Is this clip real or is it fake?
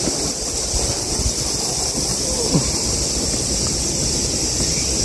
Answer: real